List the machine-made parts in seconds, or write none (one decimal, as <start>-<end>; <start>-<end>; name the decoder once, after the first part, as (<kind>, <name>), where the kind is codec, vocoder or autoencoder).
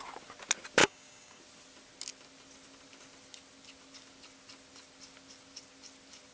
0.8-1.4 (codec, DAC)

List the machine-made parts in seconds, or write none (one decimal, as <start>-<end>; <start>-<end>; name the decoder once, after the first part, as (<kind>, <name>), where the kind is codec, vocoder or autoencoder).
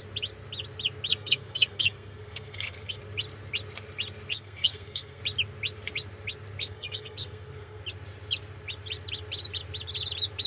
1.1-3.0 (codec, SNAC); 4.3-5.2; 6.6-7.8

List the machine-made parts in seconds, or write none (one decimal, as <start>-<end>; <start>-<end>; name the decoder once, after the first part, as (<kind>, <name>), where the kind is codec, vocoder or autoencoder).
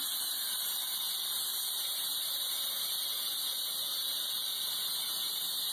1.5-2.8 (vocoder, BigVGAN v2)